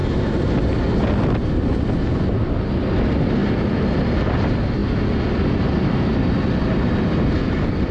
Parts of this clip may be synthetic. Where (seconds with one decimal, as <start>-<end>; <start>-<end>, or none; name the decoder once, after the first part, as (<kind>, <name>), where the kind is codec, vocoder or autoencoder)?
none